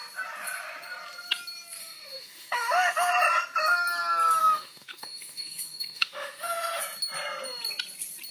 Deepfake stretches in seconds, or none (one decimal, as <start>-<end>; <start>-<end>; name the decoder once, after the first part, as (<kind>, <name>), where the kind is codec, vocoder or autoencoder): 1.8-3.1 (autoencoder, DAC-VAE); 4.4-6.8